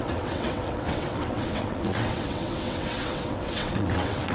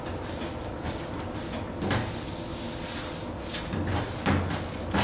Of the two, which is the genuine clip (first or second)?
second